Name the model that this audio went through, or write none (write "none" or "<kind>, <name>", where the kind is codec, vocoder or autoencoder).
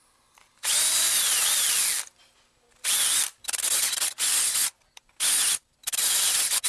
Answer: none